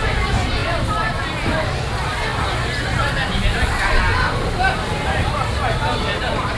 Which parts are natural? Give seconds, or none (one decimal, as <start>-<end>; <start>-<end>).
0.0-6.6